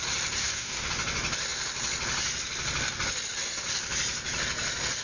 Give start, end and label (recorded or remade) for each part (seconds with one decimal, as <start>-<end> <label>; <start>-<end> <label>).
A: 0.0-0.4 recorded; 0.4-0.9 remade; 0.9-5.0 recorded